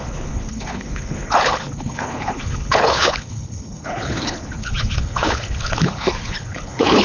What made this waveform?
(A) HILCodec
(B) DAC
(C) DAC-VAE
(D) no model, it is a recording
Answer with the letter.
A